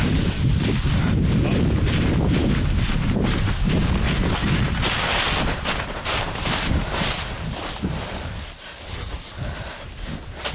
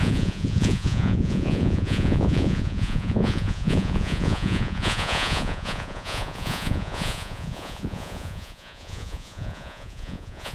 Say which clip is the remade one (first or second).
second